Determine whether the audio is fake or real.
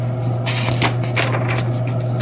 real